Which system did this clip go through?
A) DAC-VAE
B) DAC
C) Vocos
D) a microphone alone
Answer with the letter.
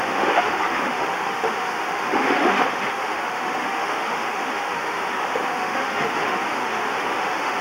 A